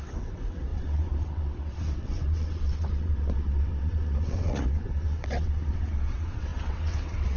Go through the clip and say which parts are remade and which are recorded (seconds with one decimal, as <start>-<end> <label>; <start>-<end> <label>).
0.0-7.4 remade